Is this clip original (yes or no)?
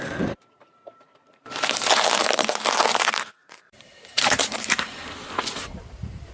no